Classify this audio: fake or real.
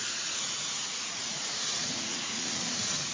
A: fake